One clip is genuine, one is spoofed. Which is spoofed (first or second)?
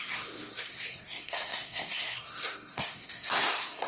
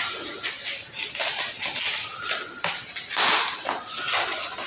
first